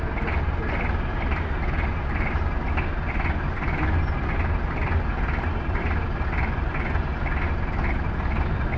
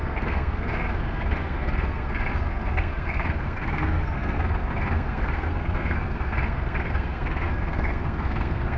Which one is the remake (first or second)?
second